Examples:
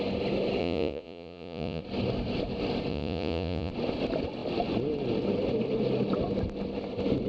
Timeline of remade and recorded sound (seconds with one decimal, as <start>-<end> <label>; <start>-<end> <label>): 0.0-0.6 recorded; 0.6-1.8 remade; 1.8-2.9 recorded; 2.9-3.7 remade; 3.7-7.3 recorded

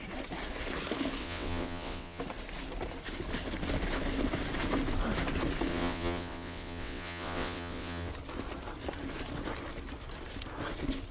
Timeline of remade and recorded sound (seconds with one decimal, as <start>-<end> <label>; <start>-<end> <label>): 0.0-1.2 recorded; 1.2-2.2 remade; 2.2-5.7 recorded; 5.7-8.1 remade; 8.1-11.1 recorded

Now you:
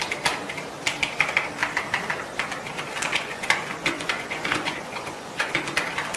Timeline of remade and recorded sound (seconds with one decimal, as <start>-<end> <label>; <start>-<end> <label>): 0.0-3.1 recorded; 3.1-5.5 remade; 5.5-6.2 recorded

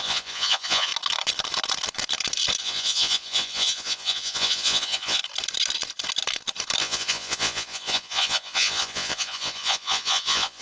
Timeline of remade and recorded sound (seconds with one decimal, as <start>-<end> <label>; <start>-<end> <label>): 0.0-0.9 remade; 0.9-2.6 recorded; 2.6-5.2 remade; 5.2-6.8 recorded; 6.8-10.6 remade

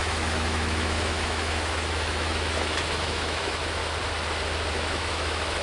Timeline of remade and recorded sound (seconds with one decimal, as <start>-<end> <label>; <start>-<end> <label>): 0.0-3.8 remade; 3.8-4.7 recorded; 4.7-5.6 remade

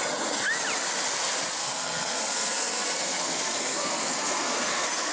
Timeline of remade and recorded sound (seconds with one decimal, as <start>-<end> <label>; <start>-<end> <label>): 0.0-1.6 recorded; 1.6-5.1 remade

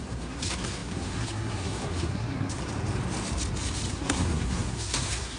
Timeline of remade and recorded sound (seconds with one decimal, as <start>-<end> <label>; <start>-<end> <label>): 0.0-2.6 remade; 2.6-3.9 recorded; 3.9-5.4 remade